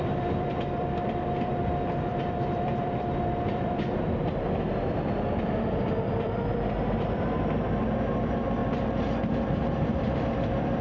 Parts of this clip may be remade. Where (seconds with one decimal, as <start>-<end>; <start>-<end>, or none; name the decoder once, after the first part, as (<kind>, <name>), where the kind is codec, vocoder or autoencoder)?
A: 0.0-10.8 (vocoder, BigVGAN v2)